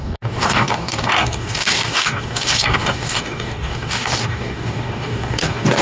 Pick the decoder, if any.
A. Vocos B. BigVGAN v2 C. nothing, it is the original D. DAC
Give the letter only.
D